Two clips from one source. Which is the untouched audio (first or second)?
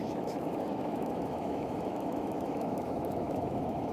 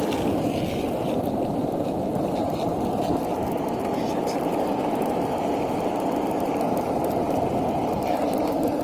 second